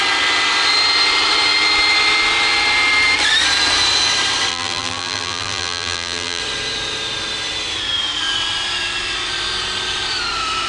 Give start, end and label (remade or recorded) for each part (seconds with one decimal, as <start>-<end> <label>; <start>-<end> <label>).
0.0-4.5 recorded; 4.5-6.4 remade; 6.4-10.7 recorded